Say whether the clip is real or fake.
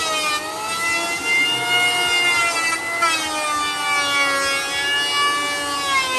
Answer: real